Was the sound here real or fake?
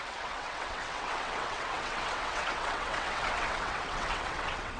fake